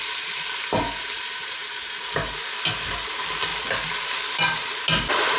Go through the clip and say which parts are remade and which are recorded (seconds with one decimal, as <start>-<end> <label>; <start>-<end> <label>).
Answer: 0.0-5.4 recorded